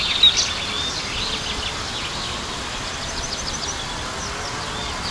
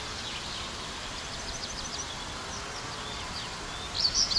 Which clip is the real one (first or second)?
first